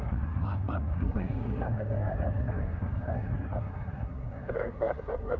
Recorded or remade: remade